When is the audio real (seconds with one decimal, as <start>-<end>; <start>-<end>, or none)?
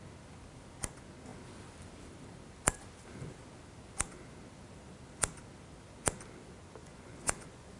0.0-6.8